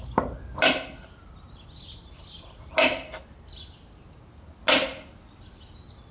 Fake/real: real